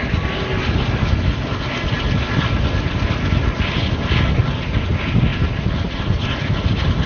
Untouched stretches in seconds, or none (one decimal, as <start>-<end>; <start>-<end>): 0.0-5.3; 6.5-7.1

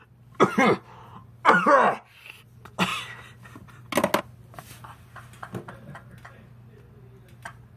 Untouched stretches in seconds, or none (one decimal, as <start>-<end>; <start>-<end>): 0.0-7.8